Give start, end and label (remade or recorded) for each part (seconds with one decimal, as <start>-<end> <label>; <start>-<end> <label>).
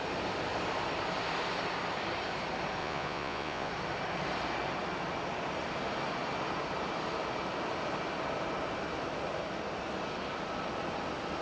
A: 0.0-2.8 recorded; 2.8-3.7 remade; 3.7-11.4 recorded